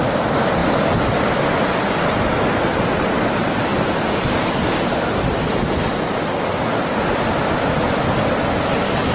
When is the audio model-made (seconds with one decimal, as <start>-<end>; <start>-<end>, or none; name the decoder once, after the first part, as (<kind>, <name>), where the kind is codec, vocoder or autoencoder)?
none